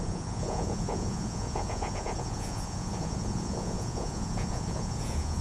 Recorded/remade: remade